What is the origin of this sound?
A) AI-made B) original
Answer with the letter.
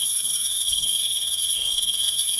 A